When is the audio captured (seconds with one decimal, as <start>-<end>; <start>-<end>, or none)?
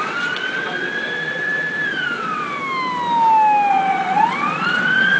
2.6-3.7